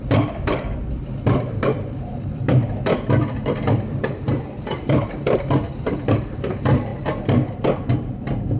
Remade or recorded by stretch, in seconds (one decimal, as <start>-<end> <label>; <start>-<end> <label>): 0.0-6.9 remade; 6.9-7.5 recorded; 7.5-8.6 remade

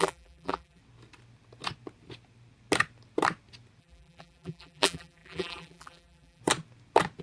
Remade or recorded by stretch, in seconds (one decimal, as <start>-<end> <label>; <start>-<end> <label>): 0.0-0.8 remade; 0.8-3.8 recorded; 3.8-6.4 remade; 6.4-7.2 recorded

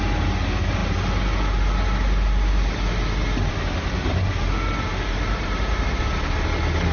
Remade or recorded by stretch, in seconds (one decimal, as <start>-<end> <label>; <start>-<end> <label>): 0.0-4.9 recorded; 4.9-6.0 remade; 6.0-6.9 recorded

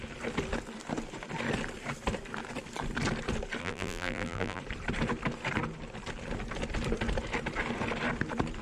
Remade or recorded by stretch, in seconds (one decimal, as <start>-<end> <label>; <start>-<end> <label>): 0.0-3.6 recorded; 3.6-4.6 remade; 4.6-8.6 recorded